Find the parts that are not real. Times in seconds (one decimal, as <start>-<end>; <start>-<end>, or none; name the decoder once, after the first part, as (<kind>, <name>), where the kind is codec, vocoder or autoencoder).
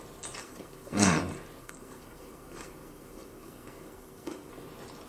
0.4-1.2 (codec, SNAC); 1.6-4.5